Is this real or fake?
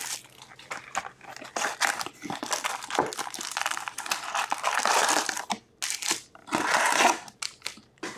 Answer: real